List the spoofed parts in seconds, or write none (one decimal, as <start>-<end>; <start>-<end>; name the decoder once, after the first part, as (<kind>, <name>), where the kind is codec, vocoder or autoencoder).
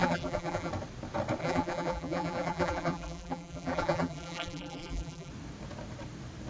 0.0-0.7 (vocoder, BigVGAN v2); 1.4-5.3